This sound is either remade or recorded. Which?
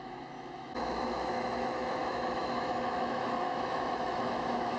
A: remade